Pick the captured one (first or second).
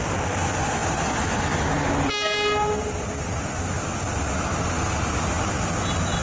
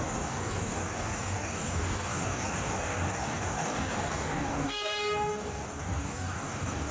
first